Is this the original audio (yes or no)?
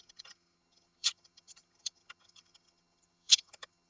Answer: no